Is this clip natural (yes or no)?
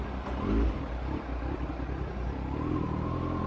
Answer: yes